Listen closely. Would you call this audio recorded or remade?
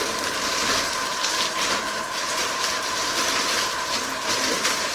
remade